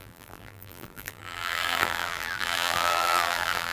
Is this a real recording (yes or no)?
no